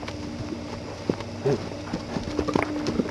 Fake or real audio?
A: real